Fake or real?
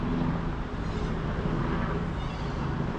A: real